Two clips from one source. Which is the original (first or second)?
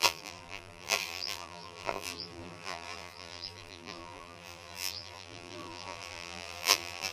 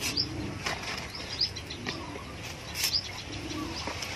second